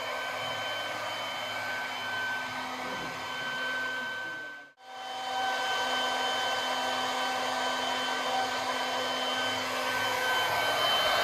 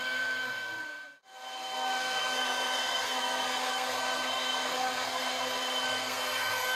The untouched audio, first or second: first